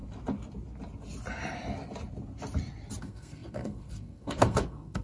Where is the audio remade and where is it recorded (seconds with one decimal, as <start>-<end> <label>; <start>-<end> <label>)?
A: 0.0-3.0 recorded; 3.0-5.0 remade